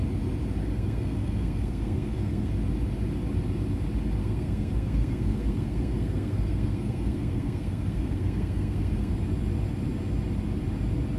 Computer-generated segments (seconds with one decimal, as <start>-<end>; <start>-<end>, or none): 0.6-2.5; 4.2-9.1